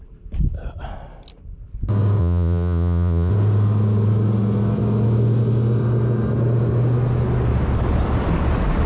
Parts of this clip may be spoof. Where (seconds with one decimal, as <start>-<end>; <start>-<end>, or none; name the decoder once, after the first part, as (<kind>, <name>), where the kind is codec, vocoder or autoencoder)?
2.2-3.3 (vocoder, Vocos)